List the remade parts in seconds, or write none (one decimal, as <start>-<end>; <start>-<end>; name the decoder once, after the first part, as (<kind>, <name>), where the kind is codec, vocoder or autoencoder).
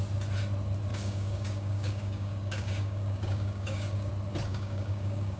0.9-4.1 (codec, DAC); 4.5-5.4